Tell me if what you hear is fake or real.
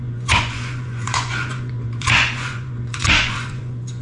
fake